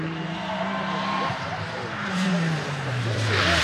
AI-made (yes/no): yes